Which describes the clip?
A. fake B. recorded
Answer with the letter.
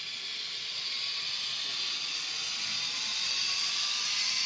B